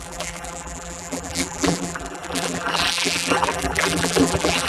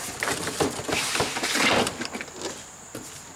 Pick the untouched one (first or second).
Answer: second